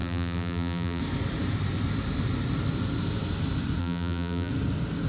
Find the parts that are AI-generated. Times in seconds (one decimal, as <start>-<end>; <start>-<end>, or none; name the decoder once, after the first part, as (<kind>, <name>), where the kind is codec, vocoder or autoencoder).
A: 0.0-1.0 (vocoder, BigVGAN v2); 3.8-4.5